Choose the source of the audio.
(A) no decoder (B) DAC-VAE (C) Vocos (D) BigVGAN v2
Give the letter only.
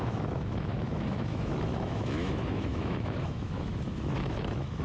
B